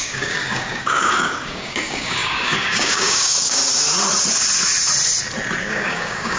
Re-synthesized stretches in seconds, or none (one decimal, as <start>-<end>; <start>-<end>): 0.0-3.6; 5.6-6.4